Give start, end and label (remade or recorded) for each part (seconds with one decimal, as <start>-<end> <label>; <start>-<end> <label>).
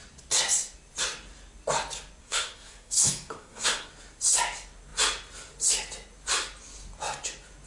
0.0-2.2 recorded; 2.2-3.9 remade; 3.9-7.7 recorded